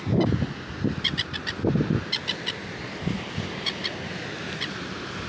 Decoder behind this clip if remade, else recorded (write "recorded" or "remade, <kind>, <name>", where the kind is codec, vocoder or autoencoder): recorded